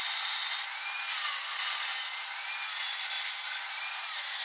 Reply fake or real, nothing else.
real